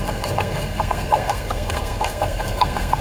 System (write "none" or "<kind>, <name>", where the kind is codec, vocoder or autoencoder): codec, SNAC